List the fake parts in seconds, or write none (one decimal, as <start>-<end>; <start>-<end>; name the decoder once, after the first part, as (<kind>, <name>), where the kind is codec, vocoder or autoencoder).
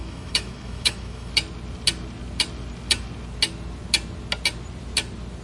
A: 0.0-1.3 (autoencoder, DAC-VAE)